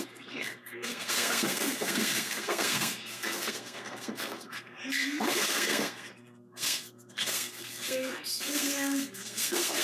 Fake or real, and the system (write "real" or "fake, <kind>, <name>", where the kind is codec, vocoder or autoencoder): fake, codec, SNAC